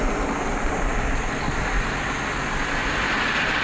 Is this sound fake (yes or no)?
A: no